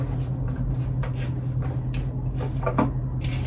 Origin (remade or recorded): recorded